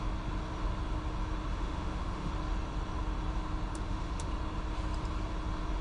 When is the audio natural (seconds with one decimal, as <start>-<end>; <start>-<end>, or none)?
0.0-1.5; 2.3-3.7; 4.3-5.8